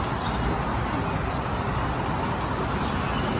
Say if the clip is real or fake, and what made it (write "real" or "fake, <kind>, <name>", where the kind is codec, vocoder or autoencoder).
real